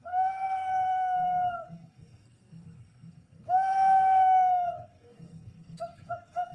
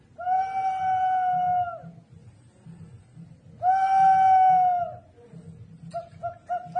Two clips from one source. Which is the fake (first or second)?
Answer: first